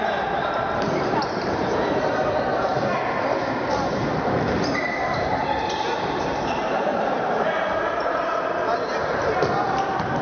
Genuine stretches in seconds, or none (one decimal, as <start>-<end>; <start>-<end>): 8.3-9.3